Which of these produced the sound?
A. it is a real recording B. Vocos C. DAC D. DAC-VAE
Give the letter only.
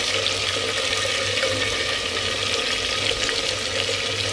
A